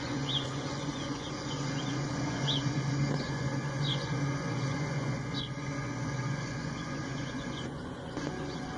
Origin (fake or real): fake